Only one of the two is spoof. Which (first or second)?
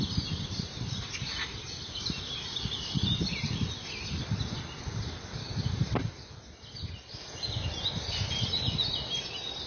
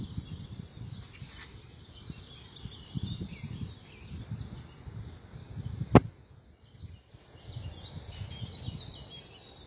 first